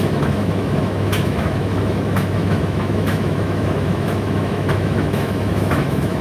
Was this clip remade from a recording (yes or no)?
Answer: yes